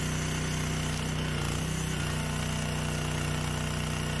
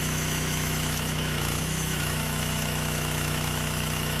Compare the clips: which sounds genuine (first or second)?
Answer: first